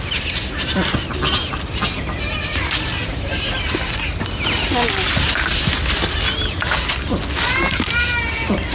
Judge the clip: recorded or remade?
recorded